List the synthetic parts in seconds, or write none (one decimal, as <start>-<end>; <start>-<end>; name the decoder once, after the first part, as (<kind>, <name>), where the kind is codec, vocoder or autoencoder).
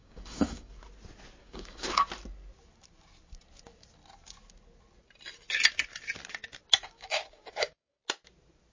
0.0-0.8 (codec, DAC); 1.4-2.1; 6.8-8.0